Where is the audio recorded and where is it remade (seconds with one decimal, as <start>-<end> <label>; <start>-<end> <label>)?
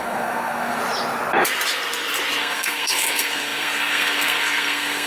0.0-0.8 remade; 0.8-2.4 recorded; 2.4-5.1 remade